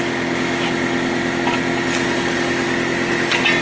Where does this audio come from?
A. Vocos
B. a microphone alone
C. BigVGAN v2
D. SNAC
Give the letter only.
B